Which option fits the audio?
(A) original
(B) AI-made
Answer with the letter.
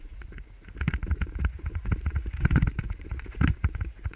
B